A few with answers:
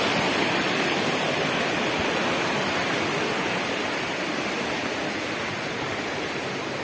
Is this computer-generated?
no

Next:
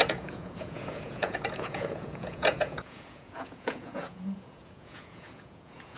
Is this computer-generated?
yes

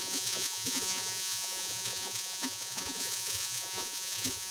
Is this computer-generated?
yes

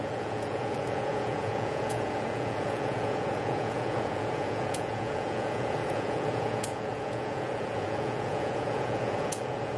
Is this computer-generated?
yes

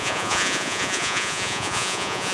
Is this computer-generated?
yes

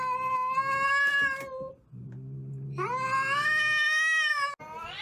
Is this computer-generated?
no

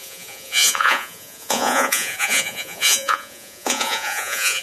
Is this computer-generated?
yes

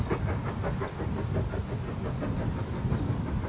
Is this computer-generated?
no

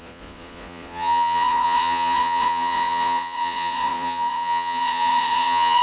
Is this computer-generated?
yes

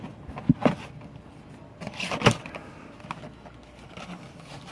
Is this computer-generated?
no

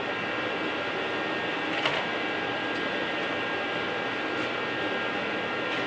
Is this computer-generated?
no